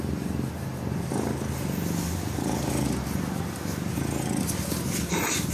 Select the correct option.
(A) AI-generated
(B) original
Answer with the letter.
B